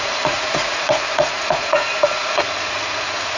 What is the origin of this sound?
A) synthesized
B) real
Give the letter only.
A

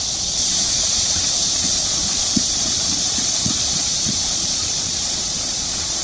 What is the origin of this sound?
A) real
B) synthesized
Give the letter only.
B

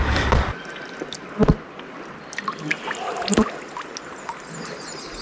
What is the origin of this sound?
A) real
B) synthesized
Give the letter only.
A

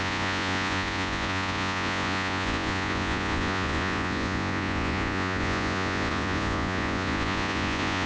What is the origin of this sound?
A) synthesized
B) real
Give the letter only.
A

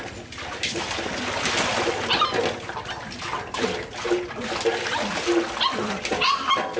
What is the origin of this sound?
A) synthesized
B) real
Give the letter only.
B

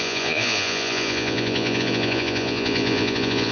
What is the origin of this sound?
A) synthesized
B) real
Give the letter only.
A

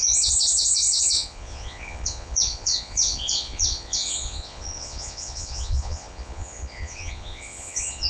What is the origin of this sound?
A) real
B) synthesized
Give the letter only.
B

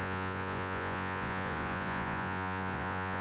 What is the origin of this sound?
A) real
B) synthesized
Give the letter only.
B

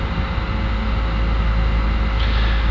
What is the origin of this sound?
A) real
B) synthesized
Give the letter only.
A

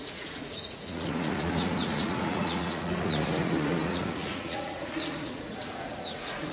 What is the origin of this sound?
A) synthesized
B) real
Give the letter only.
A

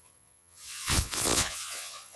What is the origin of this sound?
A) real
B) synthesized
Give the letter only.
B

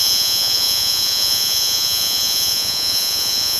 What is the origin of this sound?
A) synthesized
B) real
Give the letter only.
A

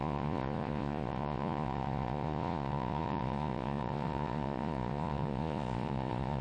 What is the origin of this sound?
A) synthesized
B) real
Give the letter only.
A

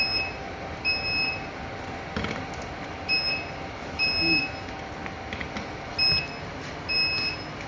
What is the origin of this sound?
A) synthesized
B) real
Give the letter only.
B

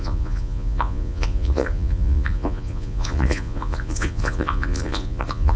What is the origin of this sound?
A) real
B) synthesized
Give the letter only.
B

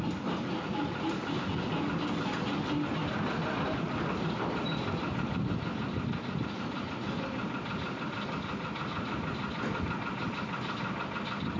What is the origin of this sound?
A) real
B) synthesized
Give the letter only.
A